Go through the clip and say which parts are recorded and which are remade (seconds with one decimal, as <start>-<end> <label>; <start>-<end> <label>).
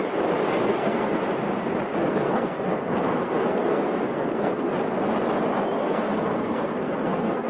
0.0-0.7 recorded; 0.7-1.2 remade; 1.2-2.0 recorded; 2.0-4.7 remade; 4.7-5.8 recorded; 5.8-7.5 remade